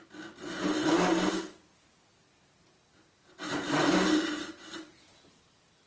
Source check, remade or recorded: recorded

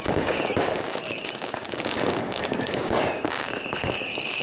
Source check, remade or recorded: remade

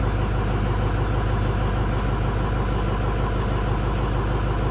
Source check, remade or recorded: recorded